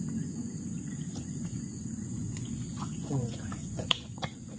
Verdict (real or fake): fake